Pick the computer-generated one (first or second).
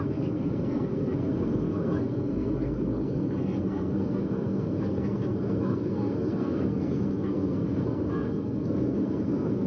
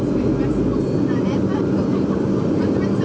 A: first